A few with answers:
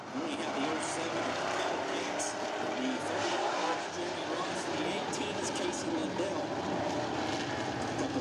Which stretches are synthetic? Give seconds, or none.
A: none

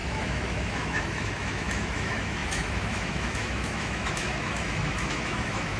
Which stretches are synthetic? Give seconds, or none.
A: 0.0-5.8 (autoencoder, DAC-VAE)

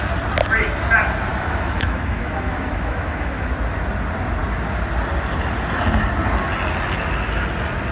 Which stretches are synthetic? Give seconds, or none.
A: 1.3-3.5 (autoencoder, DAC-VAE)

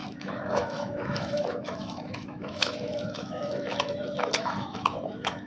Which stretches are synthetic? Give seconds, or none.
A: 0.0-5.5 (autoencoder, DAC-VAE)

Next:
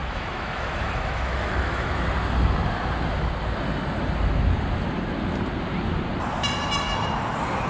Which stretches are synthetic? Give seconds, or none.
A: 0.0-1.9 (autoencoder, DAC-VAE)

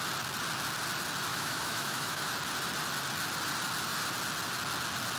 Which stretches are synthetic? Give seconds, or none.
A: 1.3-2.3 (autoencoder, DAC-VAE)

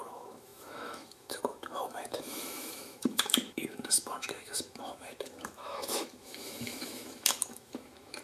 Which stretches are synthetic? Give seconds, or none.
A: 0.0-8.2 (autoencoder, DAC-VAE)

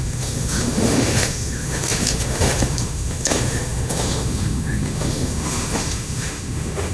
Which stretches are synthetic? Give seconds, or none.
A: 0.0-6.9 (autoencoder, DAC-VAE)